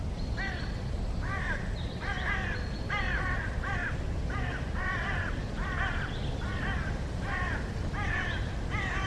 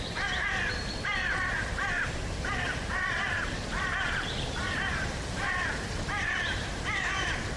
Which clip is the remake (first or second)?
second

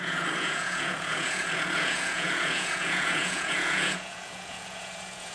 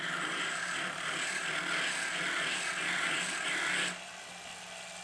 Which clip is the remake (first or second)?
first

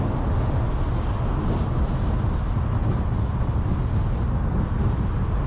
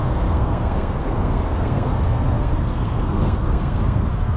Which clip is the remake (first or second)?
second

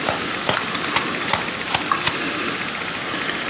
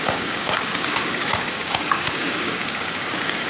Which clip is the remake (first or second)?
second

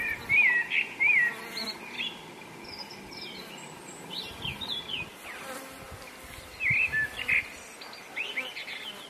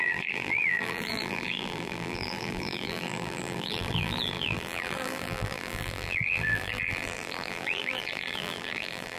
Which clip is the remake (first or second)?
second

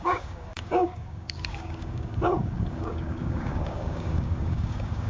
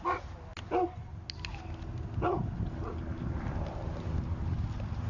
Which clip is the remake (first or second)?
first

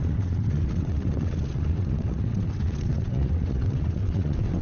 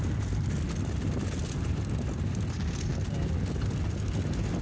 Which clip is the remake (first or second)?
first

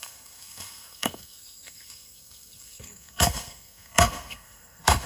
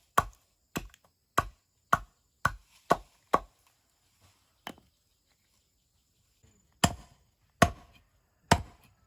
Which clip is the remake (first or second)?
first